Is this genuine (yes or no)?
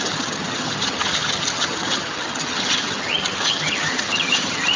no